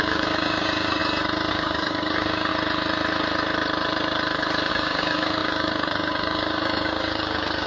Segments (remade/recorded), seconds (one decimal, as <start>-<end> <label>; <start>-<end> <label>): 0.0-1.0 remade; 1.0-1.5 recorded; 1.5-2.5 remade; 2.5-4.7 recorded; 4.7-7.7 remade